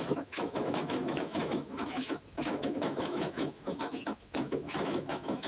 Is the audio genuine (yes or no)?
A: no